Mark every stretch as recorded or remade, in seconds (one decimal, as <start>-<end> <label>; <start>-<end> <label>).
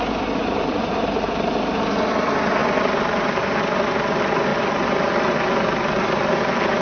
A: 0.0-0.4 recorded; 0.4-1.5 remade; 1.5-6.8 recorded